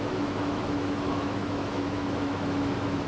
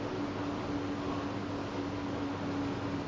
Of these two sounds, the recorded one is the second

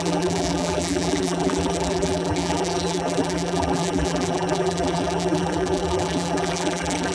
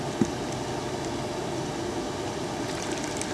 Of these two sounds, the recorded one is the second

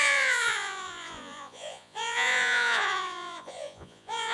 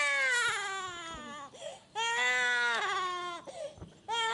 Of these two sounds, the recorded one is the second